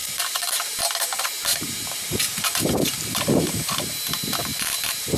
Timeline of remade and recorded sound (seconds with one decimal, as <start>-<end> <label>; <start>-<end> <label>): 0.0-0.8 remade; 0.8-1.5 recorded; 1.5-3.5 remade; 3.5-4.5 recorded; 4.5-5.2 remade